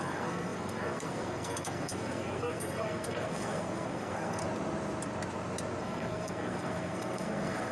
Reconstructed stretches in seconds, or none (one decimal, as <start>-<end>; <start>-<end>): 0.0-4.4; 5.8-7.7